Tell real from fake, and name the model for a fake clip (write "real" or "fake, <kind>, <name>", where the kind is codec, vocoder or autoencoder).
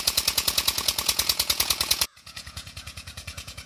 fake, vocoder, Vocos